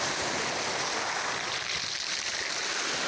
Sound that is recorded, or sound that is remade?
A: recorded